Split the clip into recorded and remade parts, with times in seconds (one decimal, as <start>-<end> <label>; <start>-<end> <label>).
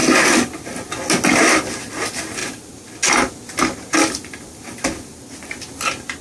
0.0-6.2 recorded